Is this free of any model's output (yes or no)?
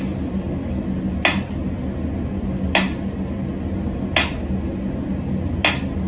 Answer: yes